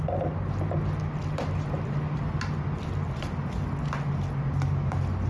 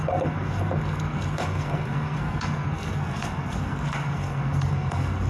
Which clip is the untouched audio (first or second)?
first